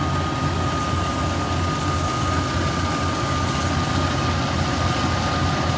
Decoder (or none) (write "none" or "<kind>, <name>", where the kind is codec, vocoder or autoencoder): none